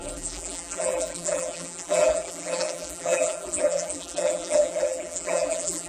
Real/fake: fake